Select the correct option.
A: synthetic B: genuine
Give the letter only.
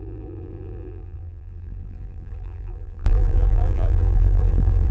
A